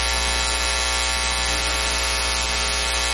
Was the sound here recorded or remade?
recorded